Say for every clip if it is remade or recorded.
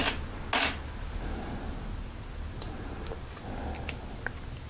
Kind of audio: recorded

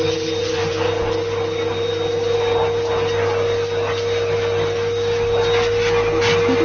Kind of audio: recorded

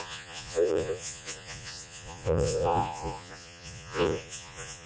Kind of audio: remade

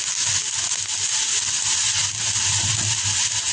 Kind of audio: recorded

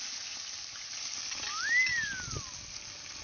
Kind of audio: recorded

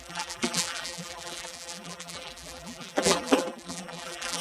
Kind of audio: remade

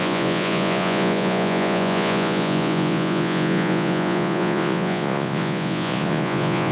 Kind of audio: remade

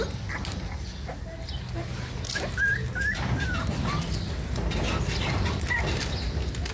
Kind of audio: recorded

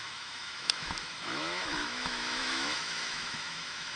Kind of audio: remade